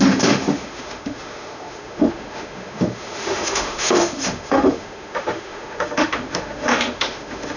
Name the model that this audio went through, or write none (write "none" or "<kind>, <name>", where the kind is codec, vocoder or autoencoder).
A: autoencoder, DAC-VAE